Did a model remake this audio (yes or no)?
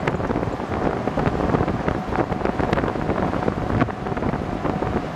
no